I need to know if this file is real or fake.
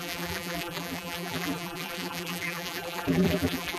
fake